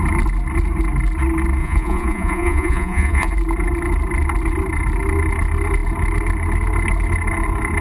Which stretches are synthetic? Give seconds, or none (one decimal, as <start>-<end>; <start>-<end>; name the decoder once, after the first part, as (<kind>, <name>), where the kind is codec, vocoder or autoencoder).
1.6-3.3 (vocoder, Vocos)